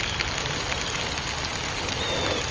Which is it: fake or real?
real